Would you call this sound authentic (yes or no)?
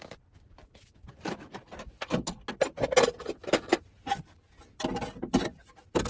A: yes